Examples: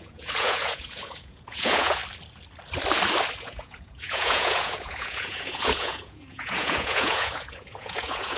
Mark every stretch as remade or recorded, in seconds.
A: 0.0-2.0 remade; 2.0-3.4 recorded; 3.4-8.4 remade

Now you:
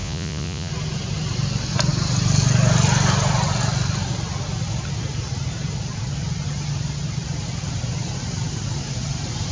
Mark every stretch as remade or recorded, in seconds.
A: 0.0-0.7 remade; 0.7-9.5 recorded

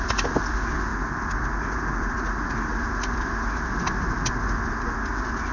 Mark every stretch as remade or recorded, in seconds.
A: 0.0-5.5 recorded

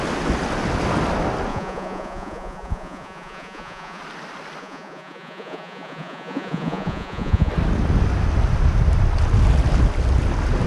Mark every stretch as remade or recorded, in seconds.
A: 0.0-1.5 recorded; 1.5-4.0 remade; 4.0-4.6 recorded; 4.6-7.5 remade; 7.5-10.7 recorded